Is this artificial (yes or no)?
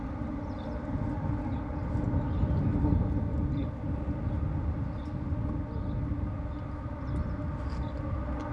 no